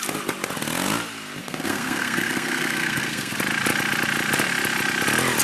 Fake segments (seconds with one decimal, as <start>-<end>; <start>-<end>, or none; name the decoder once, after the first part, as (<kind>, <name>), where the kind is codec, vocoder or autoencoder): 1.4-3.4 (codec, SNAC)